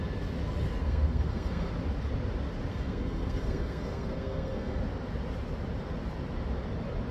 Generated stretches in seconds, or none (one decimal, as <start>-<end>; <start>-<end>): 0.8-1.7; 2.7-4.8